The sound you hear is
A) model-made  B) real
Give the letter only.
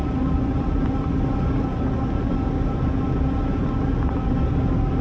B